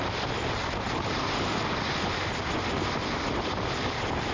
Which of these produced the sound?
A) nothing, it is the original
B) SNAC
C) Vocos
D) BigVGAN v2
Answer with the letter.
A